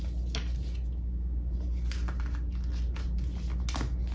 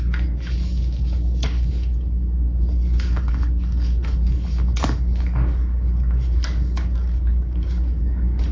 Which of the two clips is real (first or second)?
first